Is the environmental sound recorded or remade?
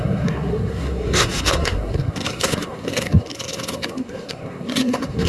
remade